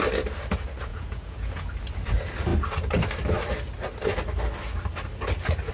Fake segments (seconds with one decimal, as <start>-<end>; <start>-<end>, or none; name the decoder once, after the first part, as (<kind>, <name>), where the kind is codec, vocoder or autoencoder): 0.9-1.7 (vocoder, Vocos)